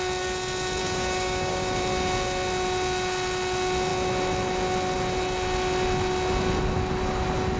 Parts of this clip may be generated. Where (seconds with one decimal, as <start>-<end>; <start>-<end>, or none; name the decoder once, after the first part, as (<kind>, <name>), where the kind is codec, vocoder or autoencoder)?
0.8-1.8 (codec, DAC)

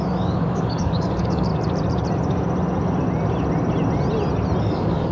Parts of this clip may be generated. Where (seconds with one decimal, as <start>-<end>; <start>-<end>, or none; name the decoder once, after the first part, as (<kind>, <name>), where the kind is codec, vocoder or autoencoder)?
0.0-1.5 (codec, DAC); 4.6-5.1